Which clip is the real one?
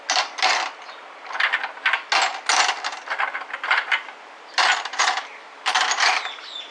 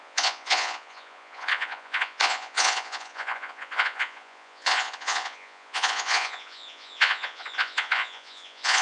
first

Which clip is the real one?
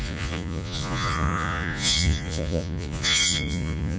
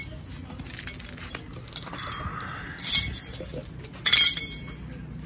second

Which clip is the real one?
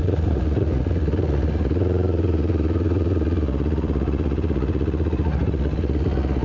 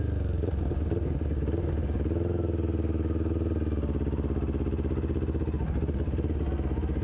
second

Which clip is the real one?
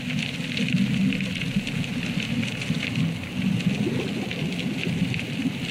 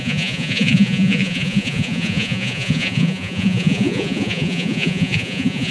first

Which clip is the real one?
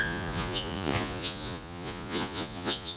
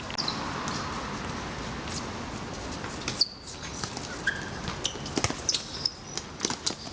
second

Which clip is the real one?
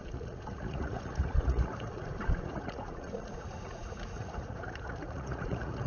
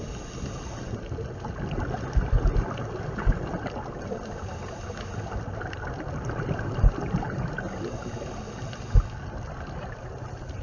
second